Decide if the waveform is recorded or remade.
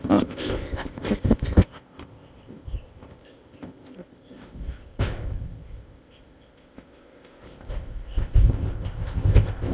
remade